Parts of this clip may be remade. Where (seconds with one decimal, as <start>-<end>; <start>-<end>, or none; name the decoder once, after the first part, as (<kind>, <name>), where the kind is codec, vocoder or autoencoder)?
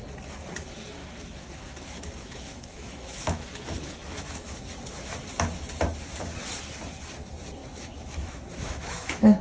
1.0-4.6 (autoencoder, DAC-VAE); 7.6-9.4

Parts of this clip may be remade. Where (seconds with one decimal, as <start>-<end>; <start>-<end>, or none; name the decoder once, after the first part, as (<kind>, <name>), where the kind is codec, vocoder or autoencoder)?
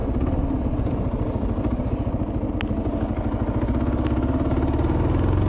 none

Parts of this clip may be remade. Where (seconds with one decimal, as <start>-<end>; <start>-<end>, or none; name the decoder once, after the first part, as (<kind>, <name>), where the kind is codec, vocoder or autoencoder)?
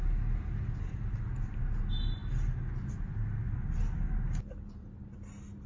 none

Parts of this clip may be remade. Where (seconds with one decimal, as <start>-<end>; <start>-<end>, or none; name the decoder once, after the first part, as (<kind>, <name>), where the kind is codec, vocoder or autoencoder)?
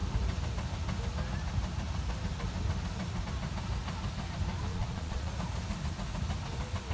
4.7-5.3 (vocoder, Vocos)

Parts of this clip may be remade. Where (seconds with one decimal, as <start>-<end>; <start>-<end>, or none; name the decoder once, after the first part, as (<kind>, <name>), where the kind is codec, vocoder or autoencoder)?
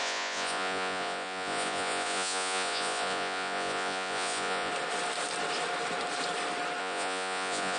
0.0-4.7 (vocoder, Vocos); 6.8-7.8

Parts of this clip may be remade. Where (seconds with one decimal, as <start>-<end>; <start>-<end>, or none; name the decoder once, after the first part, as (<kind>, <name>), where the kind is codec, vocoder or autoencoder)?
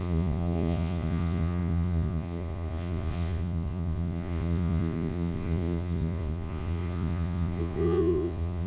0.0-8.7 (vocoder, Vocos)